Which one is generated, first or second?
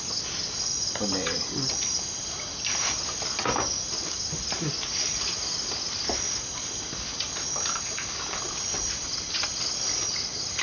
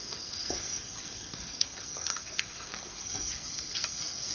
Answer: second